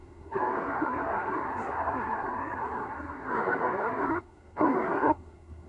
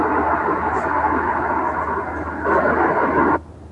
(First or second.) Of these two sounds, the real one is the second